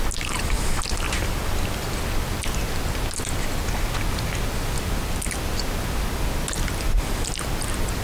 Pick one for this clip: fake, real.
real